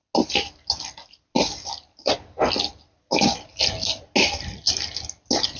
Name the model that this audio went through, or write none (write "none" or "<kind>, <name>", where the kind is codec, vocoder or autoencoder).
none